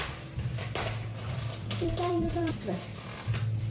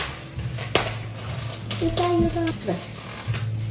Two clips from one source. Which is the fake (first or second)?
first